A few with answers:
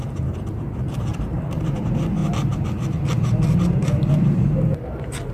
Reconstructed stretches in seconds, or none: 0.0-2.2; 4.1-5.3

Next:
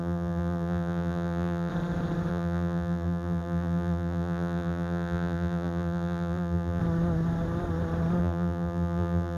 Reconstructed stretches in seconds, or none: 0.0-1.7; 2.3-6.8; 8.2-9.4

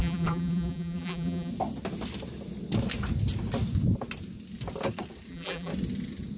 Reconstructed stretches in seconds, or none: 0.0-1.5; 5.3-5.7

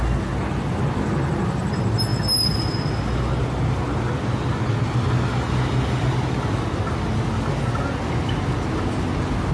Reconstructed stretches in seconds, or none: none